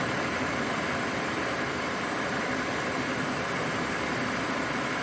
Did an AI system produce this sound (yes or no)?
no